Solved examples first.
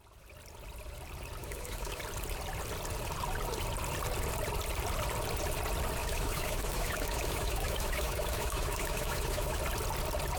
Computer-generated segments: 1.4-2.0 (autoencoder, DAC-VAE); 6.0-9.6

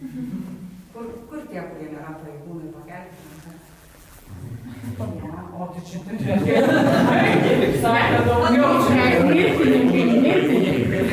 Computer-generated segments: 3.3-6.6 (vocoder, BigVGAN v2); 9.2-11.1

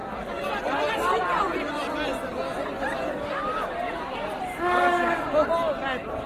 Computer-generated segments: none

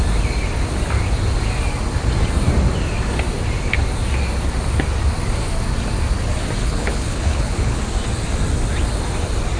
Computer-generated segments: 6.6-7.8 (codec, HILCodec)